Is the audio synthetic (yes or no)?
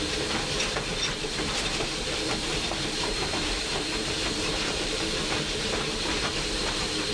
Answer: yes